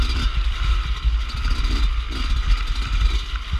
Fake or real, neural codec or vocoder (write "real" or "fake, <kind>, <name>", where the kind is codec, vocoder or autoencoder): real